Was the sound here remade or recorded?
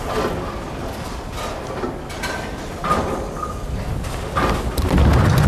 recorded